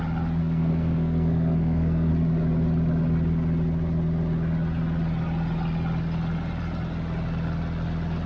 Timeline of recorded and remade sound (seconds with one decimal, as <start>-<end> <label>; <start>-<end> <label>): 0.0-0.4 recorded; 0.4-2.1 remade; 2.1-8.3 recorded